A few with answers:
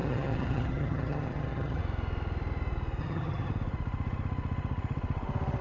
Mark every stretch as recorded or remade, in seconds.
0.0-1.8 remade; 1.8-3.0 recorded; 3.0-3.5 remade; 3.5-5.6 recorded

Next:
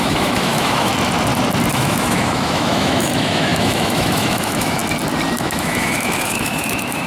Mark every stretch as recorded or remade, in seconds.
0.0-0.9 remade; 0.9-1.7 recorded; 1.7-4.8 remade; 4.8-5.4 recorded; 5.4-7.1 remade

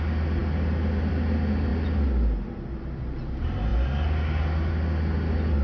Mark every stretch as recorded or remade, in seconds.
0.0-5.6 recorded

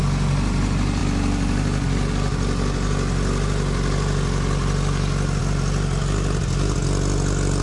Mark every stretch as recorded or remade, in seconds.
0.0-7.6 recorded